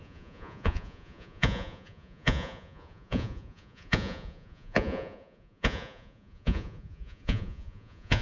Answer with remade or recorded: remade